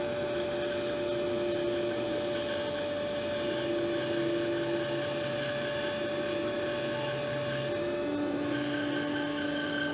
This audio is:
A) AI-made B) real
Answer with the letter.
B